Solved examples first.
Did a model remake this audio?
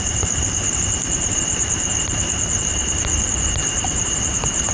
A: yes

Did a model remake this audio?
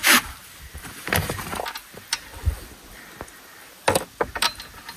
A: no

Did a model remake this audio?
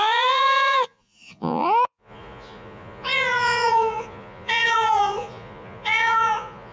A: yes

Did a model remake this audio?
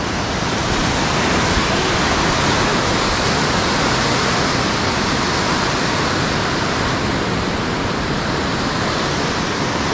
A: no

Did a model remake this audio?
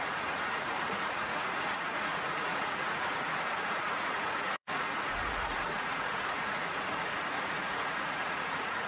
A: yes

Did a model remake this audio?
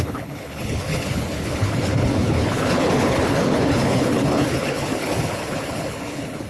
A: yes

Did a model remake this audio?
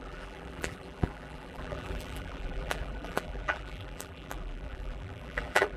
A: yes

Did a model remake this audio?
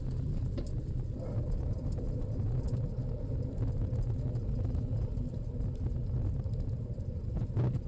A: no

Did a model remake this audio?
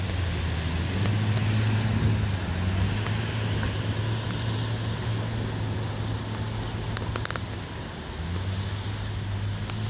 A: no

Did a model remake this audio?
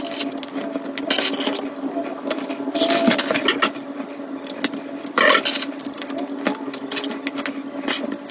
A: no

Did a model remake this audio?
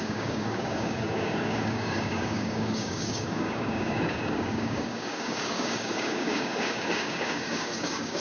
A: yes